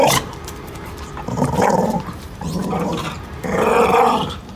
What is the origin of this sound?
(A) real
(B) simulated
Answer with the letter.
B